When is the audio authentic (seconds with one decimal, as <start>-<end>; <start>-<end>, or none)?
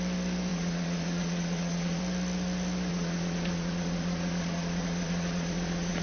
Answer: 0.0-0.5; 2.0-2.9